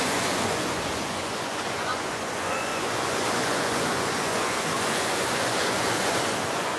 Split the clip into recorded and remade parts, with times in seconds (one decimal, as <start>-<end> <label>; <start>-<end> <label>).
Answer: 0.0-6.8 remade